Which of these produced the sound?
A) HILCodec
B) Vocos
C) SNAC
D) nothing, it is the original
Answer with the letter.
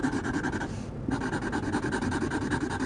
D